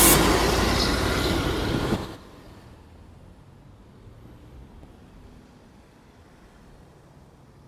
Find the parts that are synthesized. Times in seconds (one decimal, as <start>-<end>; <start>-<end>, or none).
none